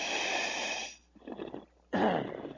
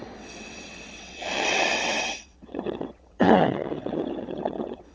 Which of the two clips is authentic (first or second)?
first